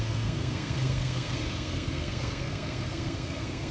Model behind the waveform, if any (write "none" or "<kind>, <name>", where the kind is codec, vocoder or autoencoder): codec, SNAC